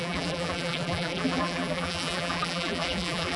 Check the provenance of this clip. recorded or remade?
remade